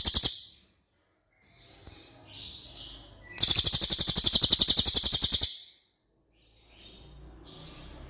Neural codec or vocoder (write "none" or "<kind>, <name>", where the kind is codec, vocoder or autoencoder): none